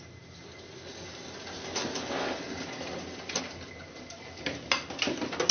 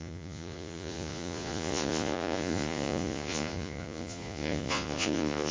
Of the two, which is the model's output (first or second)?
second